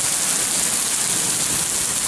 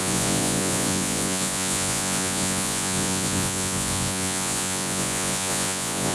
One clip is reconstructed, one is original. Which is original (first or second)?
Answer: first